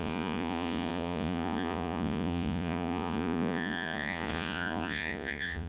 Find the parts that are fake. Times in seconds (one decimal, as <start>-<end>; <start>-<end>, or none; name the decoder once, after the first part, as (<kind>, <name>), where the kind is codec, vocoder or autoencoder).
0.0-5.7 (vocoder, Vocos)